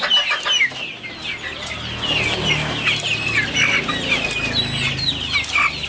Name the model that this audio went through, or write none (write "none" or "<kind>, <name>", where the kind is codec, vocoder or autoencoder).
none